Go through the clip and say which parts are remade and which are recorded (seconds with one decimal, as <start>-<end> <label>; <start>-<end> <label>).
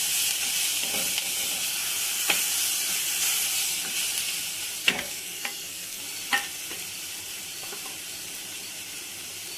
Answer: 0.0-4.8 recorded; 4.8-6.0 remade; 6.0-9.6 recorded